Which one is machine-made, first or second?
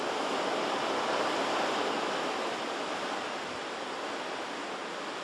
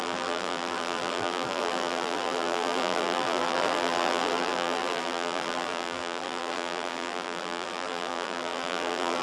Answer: second